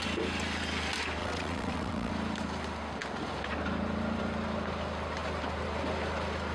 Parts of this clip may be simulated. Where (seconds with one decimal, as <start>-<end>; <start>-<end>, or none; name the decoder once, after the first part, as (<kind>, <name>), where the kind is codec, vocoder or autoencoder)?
1.2-2.1 (vocoder, WaveNeXt)